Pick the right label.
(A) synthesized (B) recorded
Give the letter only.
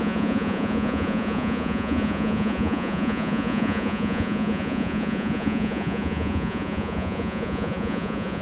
A